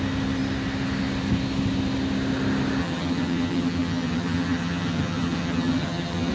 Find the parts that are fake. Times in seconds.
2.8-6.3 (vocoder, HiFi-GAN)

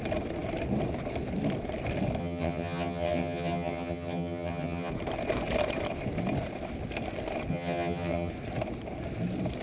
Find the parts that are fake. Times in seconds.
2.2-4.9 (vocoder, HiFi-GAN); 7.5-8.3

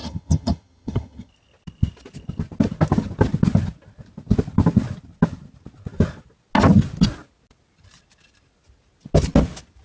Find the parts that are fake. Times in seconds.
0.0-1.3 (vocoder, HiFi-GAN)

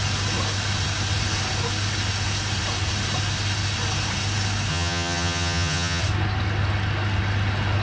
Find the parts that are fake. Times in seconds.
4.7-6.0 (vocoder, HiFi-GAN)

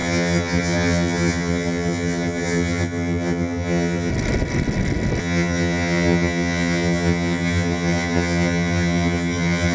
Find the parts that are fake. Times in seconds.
0.0-4.1 (vocoder, HiFi-GAN); 5.2-9.7

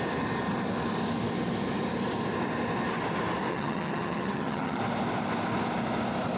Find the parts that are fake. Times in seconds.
3.5-4.8 (vocoder, HiFi-GAN)

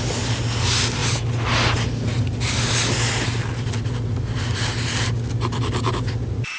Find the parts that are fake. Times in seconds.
none